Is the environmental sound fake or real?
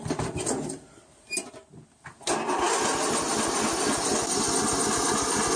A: real